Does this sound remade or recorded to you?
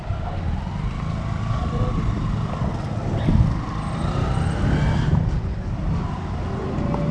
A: recorded